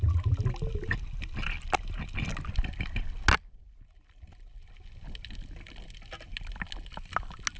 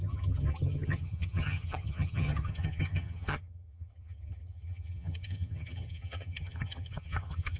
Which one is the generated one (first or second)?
second